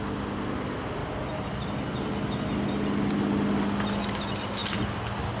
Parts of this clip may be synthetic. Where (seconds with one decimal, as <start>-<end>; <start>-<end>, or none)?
none